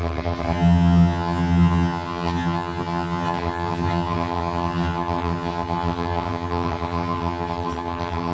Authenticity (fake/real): fake